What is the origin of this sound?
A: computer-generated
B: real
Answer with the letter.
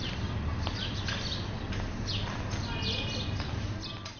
B